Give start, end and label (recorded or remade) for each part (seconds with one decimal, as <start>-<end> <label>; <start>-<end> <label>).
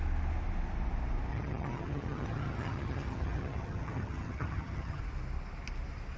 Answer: 0.0-1.3 recorded; 1.3-5.0 remade; 5.0-6.2 recorded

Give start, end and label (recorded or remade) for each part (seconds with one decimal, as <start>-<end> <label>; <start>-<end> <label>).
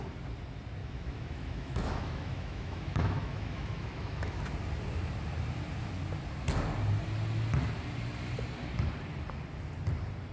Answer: 0.0-0.8 recorded; 0.8-4.4 remade; 4.4-10.3 recorded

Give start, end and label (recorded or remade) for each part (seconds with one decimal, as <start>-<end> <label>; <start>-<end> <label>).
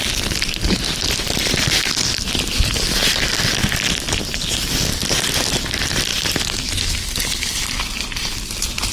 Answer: 0.0-6.1 remade; 6.1-6.7 recorded; 6.7-8.9 remade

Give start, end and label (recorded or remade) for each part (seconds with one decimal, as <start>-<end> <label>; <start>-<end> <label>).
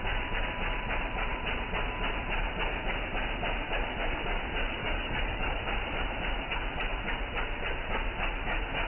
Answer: 0.0-4.8 recorded; 4.8-5.6 remade; 5.6-8.9 recorded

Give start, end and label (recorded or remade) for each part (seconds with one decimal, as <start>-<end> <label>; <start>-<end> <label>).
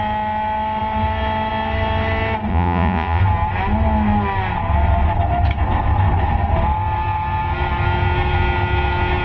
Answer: 0.0-2.5 recorded; 2.5-3.2 remade; 3.2-9.2 recorded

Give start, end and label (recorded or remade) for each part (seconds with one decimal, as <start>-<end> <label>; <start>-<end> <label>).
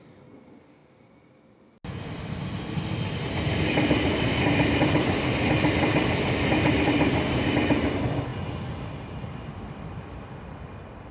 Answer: 0.0-11.1 recorded